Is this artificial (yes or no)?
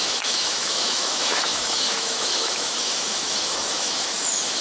yes